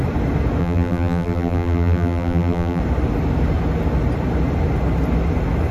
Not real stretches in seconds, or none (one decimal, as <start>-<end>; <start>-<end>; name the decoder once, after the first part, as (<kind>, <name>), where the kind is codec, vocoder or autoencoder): 0.6-2.8 (vocoder, BigVGAN v2)